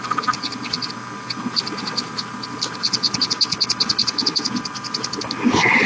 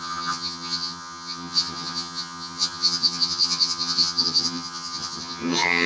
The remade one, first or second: second